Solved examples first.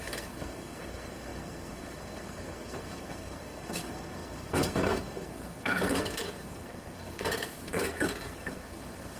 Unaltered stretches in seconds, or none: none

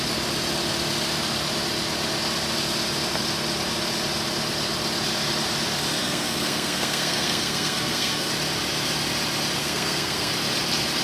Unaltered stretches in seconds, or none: 0.0-6.0; 8.3-9.6; 10.3-11.0

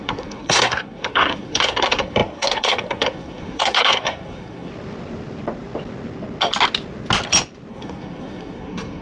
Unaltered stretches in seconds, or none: 4.7-7.7

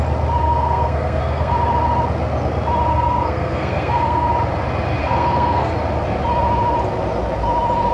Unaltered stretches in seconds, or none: 0.0-0.4; 1.5-2.9; 4.3-5.0; 5.7-7.9

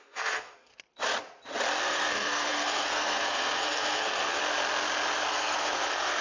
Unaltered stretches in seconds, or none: 0.7-1.8; 4.4-5.3

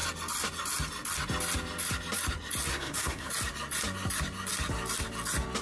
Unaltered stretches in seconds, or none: 0.0-2.7; 3.3-5.6

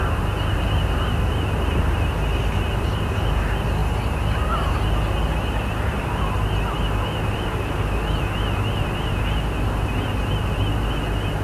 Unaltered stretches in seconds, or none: 0.0-11.4